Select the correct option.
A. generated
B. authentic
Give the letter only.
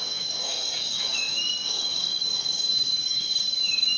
A